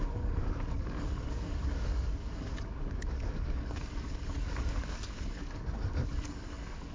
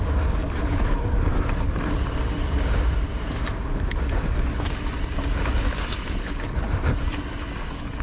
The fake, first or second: first